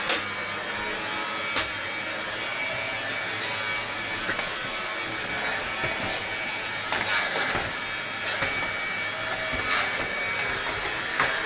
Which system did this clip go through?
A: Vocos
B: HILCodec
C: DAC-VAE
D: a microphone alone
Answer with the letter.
D